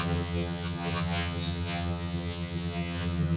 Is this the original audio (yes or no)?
no